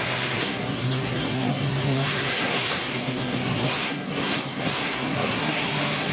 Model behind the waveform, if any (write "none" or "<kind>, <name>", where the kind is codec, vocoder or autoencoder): codec, SNAC